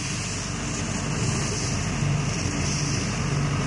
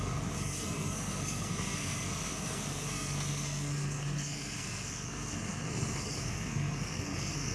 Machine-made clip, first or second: second